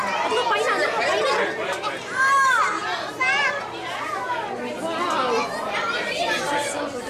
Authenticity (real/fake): real